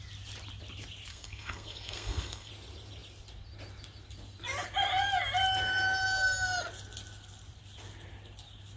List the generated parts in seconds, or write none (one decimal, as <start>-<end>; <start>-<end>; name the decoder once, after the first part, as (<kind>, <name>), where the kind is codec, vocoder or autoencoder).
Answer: 1.1-2.5 (codec, SNAC)